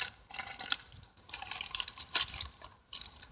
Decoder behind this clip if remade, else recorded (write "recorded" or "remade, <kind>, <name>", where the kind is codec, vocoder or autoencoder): remade, vocoder, BigVGAN v2